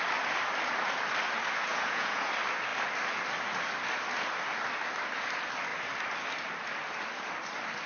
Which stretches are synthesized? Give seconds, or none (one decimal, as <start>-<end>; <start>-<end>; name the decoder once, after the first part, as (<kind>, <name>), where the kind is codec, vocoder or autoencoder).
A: 1.6-2.3 (vocoder, Vocos)